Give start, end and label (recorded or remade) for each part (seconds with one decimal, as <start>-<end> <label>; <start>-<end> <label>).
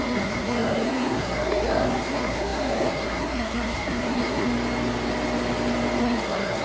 0.0-4.5 remade; 4.5-6.0 recorded; 6.0-6.6 remade